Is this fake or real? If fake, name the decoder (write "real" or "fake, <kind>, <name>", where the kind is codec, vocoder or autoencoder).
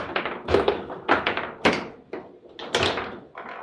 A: real